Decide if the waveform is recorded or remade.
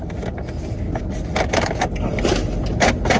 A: recorded